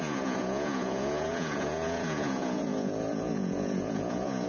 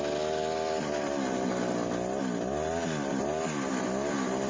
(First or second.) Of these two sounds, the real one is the second